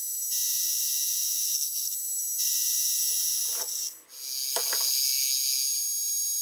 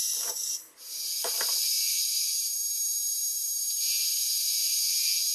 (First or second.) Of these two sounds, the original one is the first